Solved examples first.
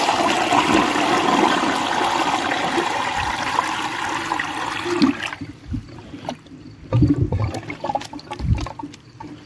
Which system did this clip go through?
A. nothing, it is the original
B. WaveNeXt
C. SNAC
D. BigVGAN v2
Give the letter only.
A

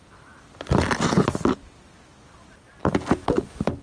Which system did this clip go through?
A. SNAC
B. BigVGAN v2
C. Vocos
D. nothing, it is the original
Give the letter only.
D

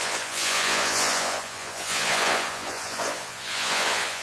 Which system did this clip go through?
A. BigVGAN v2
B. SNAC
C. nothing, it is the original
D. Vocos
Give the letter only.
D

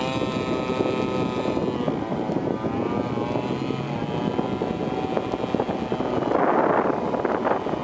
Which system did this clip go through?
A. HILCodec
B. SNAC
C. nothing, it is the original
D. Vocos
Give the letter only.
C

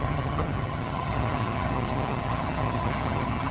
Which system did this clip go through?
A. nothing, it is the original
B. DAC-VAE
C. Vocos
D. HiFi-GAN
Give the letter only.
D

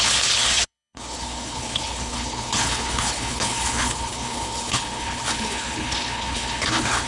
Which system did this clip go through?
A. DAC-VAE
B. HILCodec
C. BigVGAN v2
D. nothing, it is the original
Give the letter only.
B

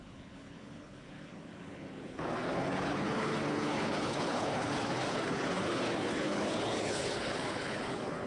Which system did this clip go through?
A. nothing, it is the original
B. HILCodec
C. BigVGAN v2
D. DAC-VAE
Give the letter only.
B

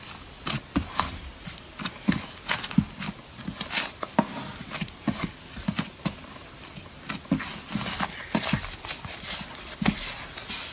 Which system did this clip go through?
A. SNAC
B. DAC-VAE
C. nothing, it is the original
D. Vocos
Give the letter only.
C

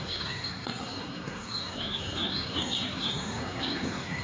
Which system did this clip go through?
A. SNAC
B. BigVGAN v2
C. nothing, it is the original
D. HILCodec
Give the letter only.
A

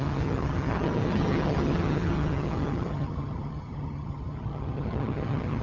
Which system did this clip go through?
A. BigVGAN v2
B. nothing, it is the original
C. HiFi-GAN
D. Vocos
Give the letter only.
C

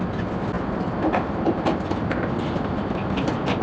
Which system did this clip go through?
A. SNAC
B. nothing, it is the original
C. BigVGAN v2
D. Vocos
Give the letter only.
B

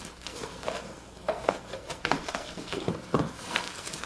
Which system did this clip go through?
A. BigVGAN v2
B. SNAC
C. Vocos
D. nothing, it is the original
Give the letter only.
B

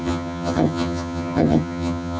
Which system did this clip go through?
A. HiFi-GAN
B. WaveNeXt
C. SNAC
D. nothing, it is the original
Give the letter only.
A